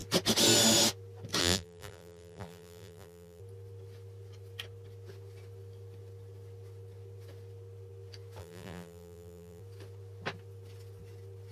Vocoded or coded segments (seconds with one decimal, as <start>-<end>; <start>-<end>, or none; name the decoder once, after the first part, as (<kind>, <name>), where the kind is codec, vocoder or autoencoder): 1.4-3.4 (vocoder, BigVGAN v2); 8.4-9.6